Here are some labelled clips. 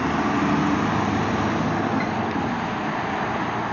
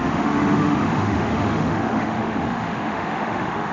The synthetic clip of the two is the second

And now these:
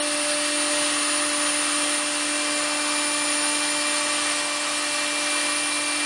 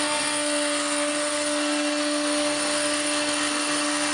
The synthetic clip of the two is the second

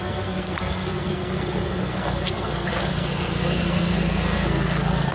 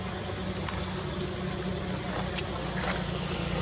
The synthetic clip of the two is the first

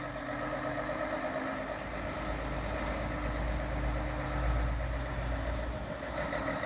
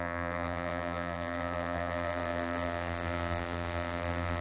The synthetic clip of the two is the second